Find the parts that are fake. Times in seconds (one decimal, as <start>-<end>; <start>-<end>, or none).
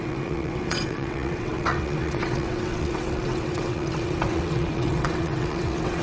0.0-6.0